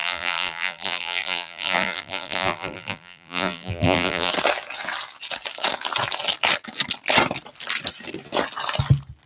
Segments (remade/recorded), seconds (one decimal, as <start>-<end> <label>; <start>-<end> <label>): 0.0-4.3 remade; 4.3-9.3 recorded